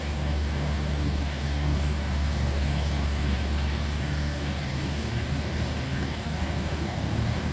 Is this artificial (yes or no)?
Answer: yes